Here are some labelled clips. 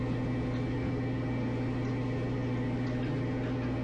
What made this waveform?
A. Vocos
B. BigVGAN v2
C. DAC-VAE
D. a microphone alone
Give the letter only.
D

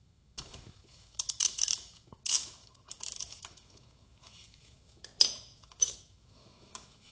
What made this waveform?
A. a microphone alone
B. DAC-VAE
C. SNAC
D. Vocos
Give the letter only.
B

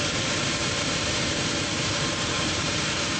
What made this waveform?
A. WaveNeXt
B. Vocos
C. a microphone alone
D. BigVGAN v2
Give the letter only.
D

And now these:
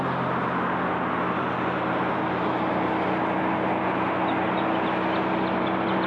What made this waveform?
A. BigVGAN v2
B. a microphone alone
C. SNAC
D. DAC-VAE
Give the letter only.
B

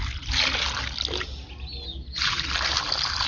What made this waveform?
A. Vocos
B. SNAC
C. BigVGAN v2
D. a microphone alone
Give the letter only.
D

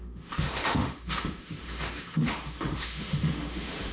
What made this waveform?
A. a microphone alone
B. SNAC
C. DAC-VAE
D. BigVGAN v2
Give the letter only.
C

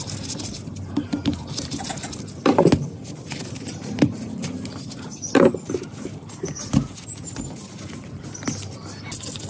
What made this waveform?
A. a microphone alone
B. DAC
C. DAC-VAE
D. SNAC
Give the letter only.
A